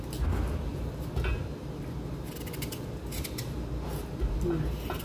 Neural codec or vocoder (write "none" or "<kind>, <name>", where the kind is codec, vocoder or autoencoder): none